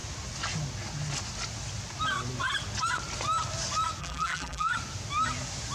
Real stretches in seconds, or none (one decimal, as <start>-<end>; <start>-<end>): 0.0-4.0; 4.7-5.7